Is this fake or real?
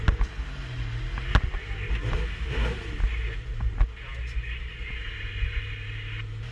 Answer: real